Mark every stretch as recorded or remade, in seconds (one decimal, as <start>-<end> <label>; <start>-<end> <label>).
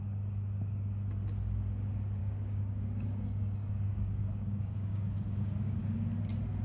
0.0-2.2 recorded; 2.2-5.8 remade; 5.8-6.6 recorded